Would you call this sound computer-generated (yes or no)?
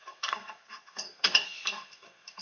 yes